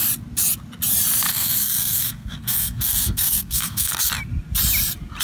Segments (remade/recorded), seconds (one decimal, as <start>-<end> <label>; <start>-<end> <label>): 0.0-1.3 recorded; 1.3-4.1 remade; 4.1-5.2 recorded